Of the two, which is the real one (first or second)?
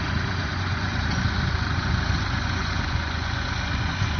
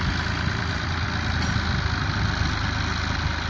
second